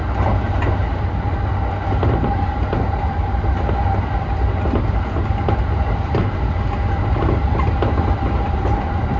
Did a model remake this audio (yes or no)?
no